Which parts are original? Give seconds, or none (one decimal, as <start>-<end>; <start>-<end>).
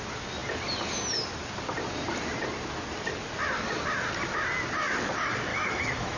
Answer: 0.0-5.5